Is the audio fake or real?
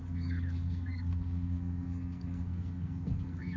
fake